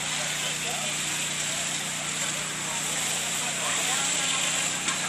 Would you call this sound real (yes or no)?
yes